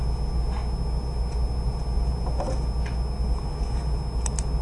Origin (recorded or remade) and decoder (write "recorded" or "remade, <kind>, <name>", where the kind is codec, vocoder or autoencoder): recorded